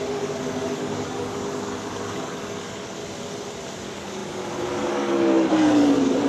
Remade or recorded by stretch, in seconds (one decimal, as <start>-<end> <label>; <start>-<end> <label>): 0.0-3.0 remade; 3.0-3.8 recorded; 3.8-6.3 remade